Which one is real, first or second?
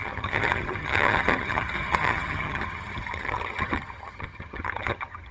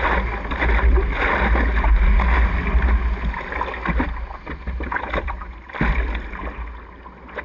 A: second